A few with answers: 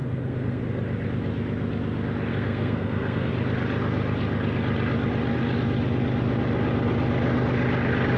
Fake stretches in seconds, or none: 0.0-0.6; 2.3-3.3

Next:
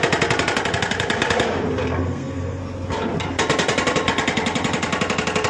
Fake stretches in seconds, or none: 2.0-2.6

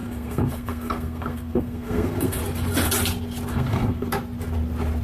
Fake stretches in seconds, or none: 0.0-2.4; 3.5-4.1

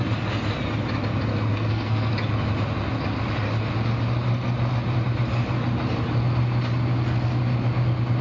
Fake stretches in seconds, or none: 1.5-2.1

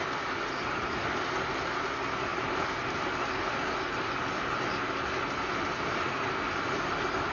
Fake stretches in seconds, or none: none